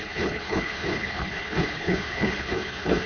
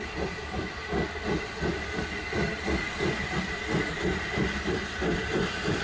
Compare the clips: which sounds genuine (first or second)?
second